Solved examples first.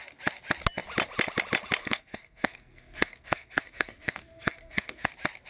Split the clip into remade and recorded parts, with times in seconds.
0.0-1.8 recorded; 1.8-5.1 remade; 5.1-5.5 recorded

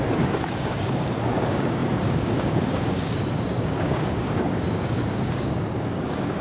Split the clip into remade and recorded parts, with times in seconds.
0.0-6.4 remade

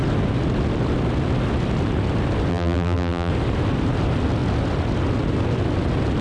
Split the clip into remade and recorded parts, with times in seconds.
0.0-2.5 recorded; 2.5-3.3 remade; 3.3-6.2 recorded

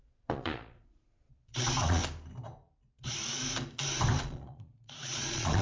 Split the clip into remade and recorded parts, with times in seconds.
0.0-2.0 remade; 2.0-4.2 recorded; 4.2-5.6 remade

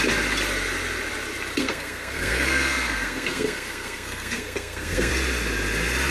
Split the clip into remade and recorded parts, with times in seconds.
0.0-1.6 recorded; 1.6-5.1 remade; 5.1-6.1 recorded

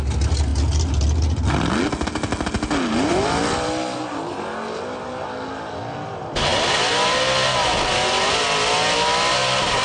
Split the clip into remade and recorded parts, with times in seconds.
0.0-3.1 recorded; 3.1-4.3 remade; 4.3-9.8 recorded

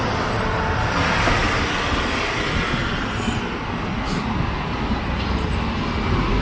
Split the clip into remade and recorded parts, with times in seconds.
0.0-6.4 recorded